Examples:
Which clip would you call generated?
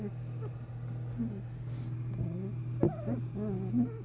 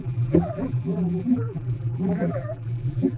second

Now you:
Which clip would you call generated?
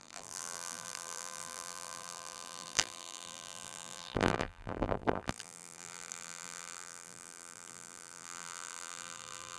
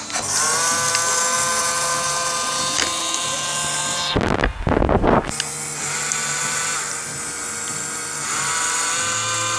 first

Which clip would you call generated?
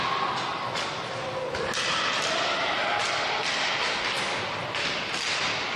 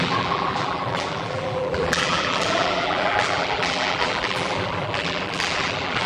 second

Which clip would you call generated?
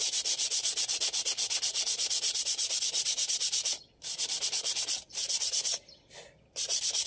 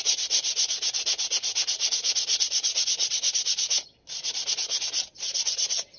first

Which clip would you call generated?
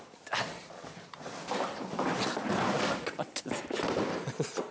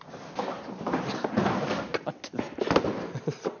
first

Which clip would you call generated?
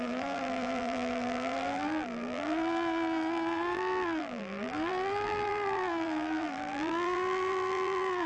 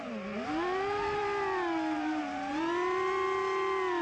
first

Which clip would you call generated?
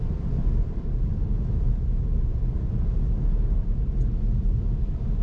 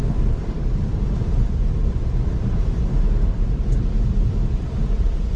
second